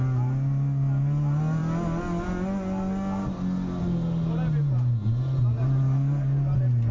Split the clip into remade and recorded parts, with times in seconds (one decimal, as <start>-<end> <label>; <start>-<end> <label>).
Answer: 0.0-6.9 recorded